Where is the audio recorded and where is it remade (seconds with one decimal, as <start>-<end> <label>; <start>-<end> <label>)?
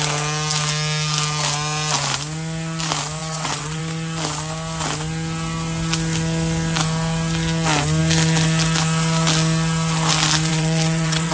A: 0.0-3.2 recorded; 3.2-3.8 remade; 3.8-10.5 recorded; 10.5-11.3 remade